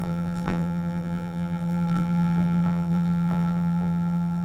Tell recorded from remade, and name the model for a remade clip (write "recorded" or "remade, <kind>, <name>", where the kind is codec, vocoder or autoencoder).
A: remade, vocoder, BigVGAN v2